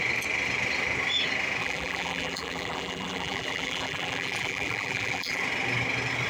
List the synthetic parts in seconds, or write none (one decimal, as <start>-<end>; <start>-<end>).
1.6-5.4